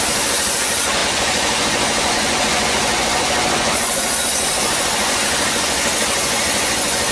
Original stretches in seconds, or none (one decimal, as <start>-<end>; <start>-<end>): none